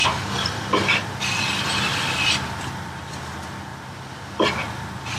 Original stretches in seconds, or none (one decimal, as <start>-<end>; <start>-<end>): 0.0-5.2